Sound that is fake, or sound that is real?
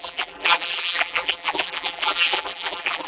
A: fake